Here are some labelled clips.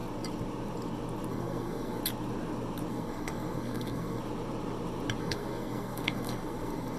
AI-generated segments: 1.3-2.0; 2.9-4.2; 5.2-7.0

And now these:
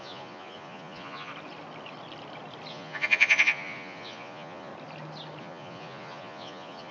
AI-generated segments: 0.0-1.3; 2.7-4.7; 5.4-6.9

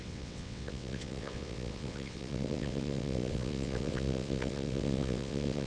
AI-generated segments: 0.0-5.7

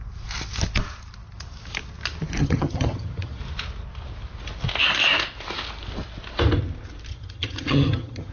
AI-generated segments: 2.4-3.4; 7.1-8.3

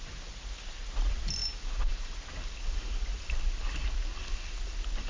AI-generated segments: none

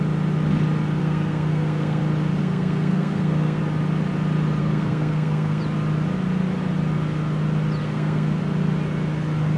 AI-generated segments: 1.0-2.0; 2.4-3.6; 4.6-5.6; 7.8-8.4